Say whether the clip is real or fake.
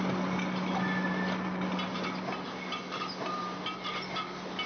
real